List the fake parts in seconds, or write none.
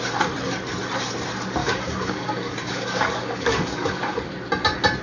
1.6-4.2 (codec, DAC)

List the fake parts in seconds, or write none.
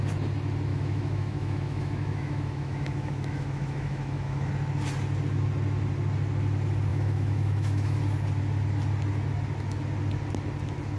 0.7-4.5 (autoencoder, DAC-VAE); 6.9-8.0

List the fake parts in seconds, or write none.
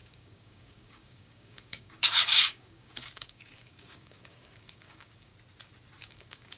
0.0-5.3 (codec, DAC); 6.0-6.6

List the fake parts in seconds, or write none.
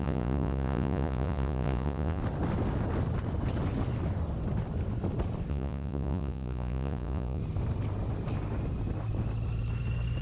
0.0-2.2 (vocoder, Vocos); 5.5-7.4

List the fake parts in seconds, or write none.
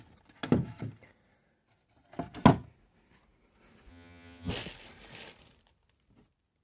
3.9-4.5 (vocoder, HiFi-GAN)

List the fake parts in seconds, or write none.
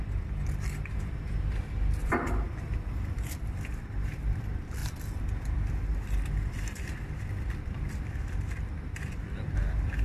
0.0-4.8 (vocoder, BigVGAN v2); 5.7-10.0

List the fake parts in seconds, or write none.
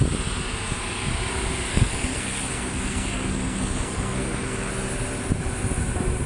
1.7-4.7 (codec, SNAC)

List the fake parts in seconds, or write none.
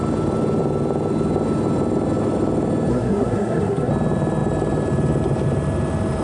2.9-3.9 (codec, SNAC)